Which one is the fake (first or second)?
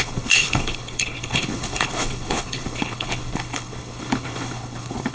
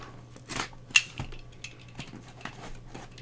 first